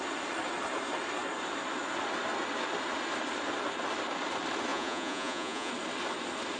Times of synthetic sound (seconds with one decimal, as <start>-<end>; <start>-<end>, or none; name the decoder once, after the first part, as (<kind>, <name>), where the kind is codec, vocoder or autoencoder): 4.7-5.7 (vocoder, Vocos)